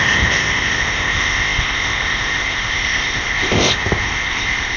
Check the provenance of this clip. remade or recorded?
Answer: remade